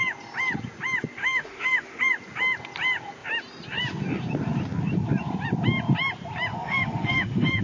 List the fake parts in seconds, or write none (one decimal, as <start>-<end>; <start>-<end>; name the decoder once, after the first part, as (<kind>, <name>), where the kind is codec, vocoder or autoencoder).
1.2-2.0 (autoencoder, DAC-VAE); 6.5-7.6